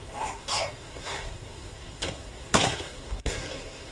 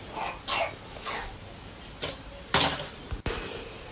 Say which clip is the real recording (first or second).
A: second